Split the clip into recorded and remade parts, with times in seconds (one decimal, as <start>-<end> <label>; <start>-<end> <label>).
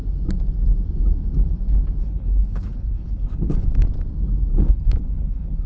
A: 0.0-2.0 recorded; 2.0-3.7 remade; 3.7-4.5 recorded; 4.5-5.7 remade